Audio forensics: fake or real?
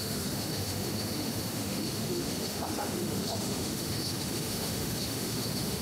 fake